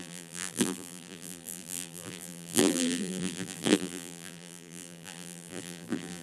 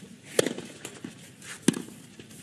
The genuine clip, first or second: second